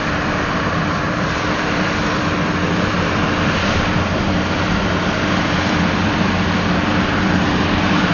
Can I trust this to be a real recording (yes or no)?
no